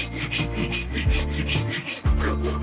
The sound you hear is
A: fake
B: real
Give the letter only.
B